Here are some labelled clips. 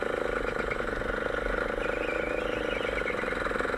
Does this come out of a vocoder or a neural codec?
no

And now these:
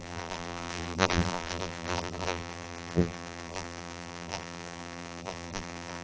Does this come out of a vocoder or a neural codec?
yes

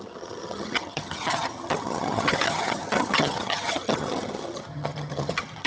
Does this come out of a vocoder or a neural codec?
yes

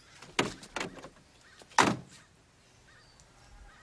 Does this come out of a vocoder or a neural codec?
no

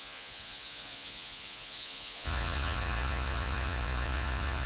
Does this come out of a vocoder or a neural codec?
yes